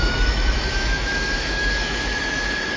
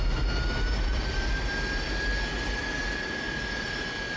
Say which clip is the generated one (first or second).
first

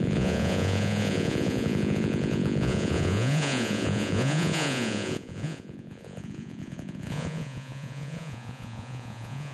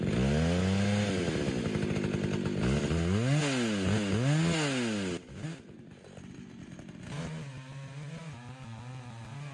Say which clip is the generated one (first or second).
first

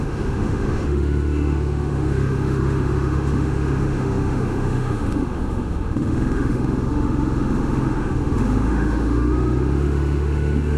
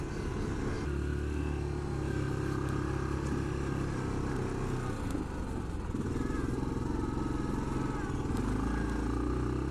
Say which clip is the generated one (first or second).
first